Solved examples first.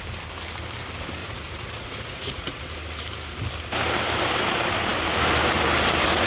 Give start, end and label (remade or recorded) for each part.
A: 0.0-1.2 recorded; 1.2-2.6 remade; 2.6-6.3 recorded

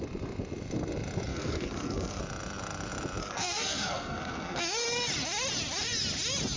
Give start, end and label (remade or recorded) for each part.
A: 0.0-1.3 recorded; 1.3-2.2 remade; 2.2-3.2 recorded; 3.2-4.6 remade; 4.6-6.6 recorded

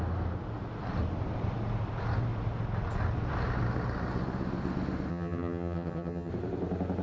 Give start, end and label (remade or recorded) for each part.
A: 0.0-5.1 recorded; 5.1-6.3 remade; 6.3-7.0 recorded